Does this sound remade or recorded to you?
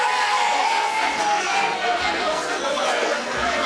remade